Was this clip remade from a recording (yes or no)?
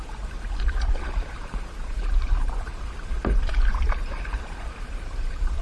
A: yes